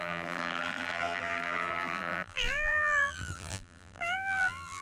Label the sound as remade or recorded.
remade